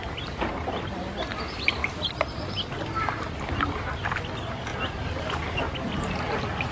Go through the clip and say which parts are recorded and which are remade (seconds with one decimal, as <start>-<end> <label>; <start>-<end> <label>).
0.0-6.7 recorded